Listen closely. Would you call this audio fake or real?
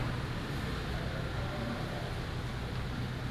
real